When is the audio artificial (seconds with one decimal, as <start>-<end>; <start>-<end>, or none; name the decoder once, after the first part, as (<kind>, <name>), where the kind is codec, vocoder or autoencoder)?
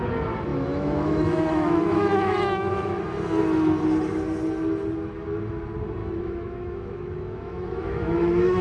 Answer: 0.5-3.0 (autoencoder, DAC-VAE); 6.0-8.6